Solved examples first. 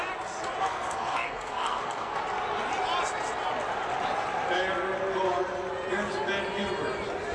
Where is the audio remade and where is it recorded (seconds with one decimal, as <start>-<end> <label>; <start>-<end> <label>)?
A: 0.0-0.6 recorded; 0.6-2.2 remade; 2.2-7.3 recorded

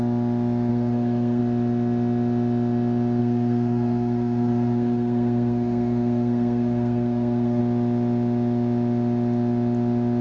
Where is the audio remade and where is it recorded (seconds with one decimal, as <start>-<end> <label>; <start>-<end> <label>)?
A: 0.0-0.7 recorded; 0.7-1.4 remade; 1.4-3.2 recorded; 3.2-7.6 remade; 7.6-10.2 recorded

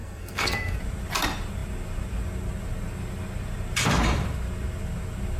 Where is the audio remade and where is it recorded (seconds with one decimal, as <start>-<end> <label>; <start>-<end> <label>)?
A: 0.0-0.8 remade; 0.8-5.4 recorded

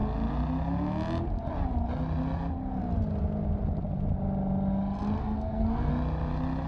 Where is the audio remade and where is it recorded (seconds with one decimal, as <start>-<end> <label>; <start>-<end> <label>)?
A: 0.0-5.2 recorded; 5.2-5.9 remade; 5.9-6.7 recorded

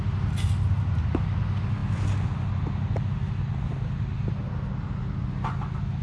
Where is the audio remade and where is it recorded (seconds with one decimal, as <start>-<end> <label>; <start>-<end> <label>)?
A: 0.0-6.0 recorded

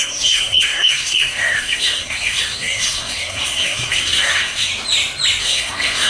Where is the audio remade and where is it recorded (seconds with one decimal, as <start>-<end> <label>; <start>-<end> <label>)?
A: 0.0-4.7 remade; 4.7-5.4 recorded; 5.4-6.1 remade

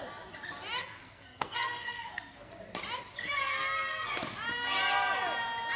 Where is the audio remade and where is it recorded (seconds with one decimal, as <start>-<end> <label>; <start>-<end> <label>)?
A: 0.0-0.8 recorded; 0.8-2.5 remade; 2.5-3.2 recorded; 3.2-4.2 remade; 4.2-5.8 recorded

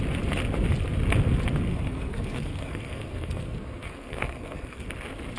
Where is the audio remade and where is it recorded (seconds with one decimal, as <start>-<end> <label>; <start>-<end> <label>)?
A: 0.0-1.7 recorded; 1.7-4.9 remade; 4.9-5.4 recorded